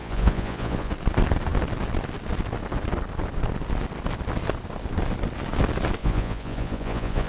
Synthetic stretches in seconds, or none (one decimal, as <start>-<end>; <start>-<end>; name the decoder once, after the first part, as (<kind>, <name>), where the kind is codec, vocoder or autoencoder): 0.0-0.9 (vocoder, Vocos); 6.0-7.3